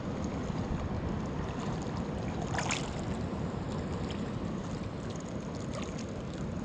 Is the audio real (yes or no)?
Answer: yes